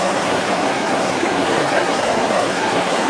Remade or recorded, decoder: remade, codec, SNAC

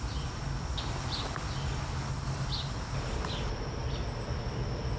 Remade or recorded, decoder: recorded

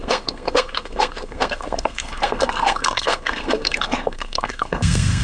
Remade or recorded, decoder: remade, codec, SNAC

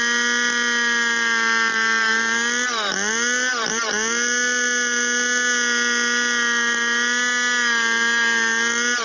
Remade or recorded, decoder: recorded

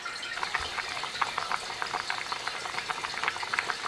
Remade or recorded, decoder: recorded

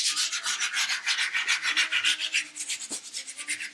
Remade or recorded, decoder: recorded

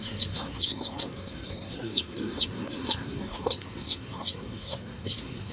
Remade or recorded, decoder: remade, codec, SNAC